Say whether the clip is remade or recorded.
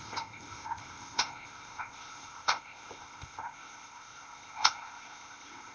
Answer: remade